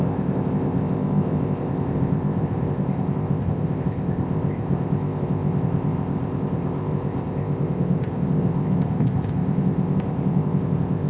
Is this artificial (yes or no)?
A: yes